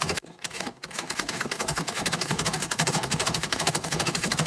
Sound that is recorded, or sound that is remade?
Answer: remade